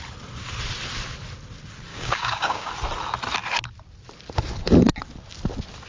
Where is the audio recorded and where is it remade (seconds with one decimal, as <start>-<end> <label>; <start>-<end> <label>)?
0.0-1.9 recorded; 1.9-2.7 remade; 2.7-5.9 recorded